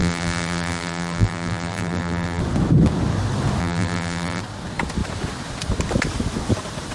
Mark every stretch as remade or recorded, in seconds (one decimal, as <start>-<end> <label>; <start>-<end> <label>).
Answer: 0.0-2.4 remade; 2.4-3.6 recorded; 3.6-4.4 remade; 4.4-6.9 recorded